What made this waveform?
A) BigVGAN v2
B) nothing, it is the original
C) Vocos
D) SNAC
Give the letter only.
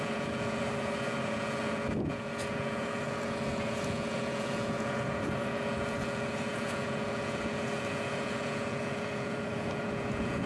C